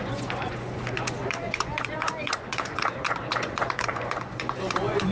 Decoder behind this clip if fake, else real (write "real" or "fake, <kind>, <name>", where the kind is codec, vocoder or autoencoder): fake, vocoder, Vocos